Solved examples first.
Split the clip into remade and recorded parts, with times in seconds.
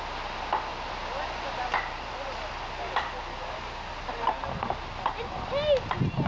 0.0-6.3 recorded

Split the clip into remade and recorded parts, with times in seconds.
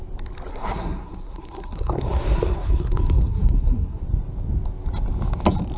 0.0-0.5 recorded; 0.5-4.0 remade; 4.0-5.8 recorded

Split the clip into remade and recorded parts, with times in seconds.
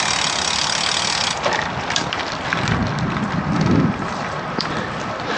0.0-5.4 recorded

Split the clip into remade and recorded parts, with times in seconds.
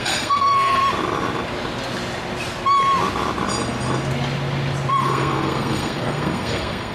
0.0-0.8 remade; 0.8-4.9 recorded; 4.9-6.9 remade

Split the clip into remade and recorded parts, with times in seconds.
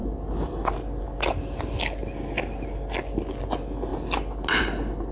0.0-5.1 recorded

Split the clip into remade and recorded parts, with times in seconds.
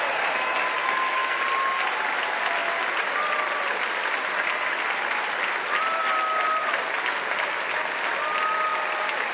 0.0-0.8 recorded; 0.8-1.4 remade; 1.4-9.3 recorded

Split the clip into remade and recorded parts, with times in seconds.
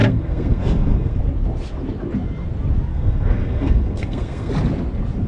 0.0-1.2 remade; 1.2-2.9 recorded; 2.9-4.5 remade; 4.5-5.3 recorded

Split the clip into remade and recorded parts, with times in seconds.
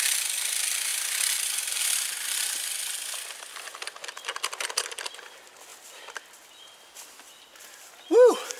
0.0-8.6 recorded